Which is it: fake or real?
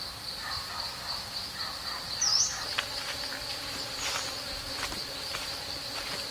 real